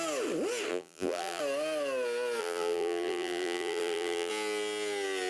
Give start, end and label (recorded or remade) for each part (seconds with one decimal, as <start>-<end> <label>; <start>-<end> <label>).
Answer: 0.0-0.7 recorded; 0.7-1.4 remade; 1.4-2.4 recorded; 2.4-4.3 remade; 4.3-5.3 recorded